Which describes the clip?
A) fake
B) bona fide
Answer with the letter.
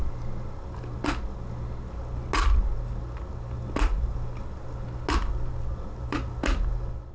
B